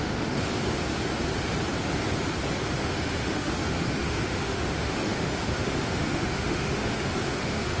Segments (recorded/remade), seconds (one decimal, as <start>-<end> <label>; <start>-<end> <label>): 0.0-0.5 remade; 0.5-2.8 recorded; 2.8-7.8 remade